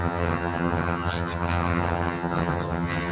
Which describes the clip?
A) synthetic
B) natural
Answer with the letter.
A